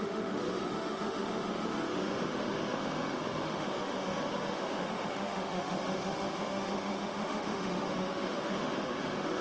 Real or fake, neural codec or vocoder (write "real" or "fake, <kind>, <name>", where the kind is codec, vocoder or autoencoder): fake, autoencoder, DAC-VAE